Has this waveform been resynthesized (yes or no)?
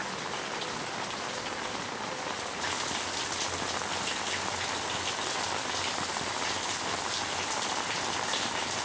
no